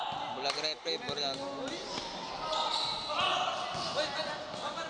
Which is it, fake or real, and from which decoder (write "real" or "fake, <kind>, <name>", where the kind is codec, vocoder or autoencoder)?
real